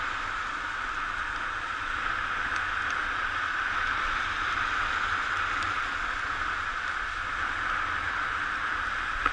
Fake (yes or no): no